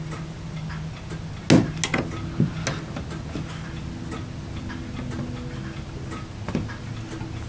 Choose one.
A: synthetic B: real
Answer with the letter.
B